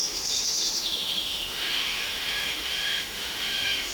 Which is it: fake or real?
fake